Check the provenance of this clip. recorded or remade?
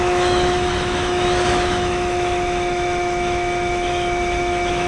remade